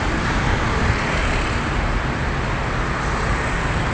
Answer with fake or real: real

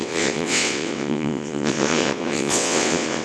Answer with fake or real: fake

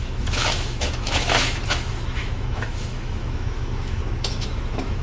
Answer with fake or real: fake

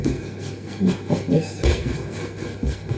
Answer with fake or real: fake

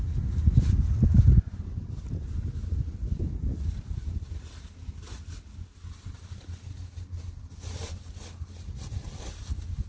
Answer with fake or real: real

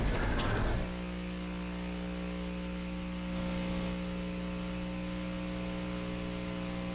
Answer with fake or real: real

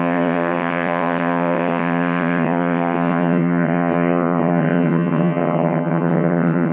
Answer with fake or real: fake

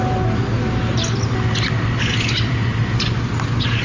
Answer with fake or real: real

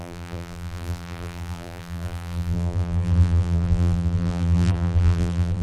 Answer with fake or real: fake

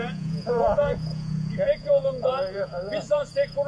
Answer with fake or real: fake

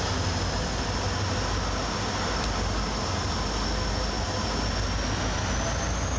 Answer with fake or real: real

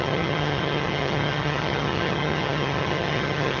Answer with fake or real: fake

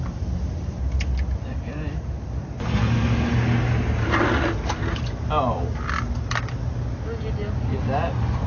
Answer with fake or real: real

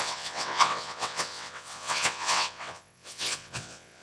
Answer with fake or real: fake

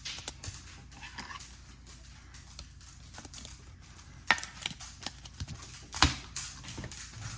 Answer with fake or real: real